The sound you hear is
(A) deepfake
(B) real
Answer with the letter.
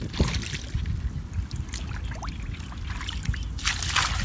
B